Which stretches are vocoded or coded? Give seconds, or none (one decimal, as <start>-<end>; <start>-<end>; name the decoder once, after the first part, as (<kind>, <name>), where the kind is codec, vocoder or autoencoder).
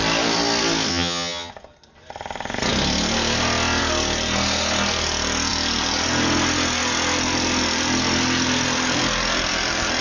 0.9-1.5 (vocoder, HiFi-GAN)